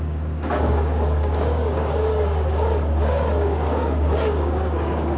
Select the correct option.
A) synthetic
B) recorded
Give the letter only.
A